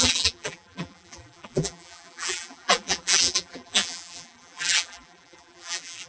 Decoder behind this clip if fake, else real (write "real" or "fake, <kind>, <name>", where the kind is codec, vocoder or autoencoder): fake, vocoder, BigVGAN v2